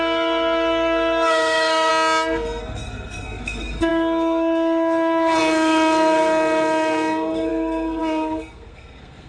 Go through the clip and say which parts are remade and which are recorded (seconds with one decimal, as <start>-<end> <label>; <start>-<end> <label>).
0.0-1.9 remade; 1.9-2.6 recorded; 2.6-9.3 remade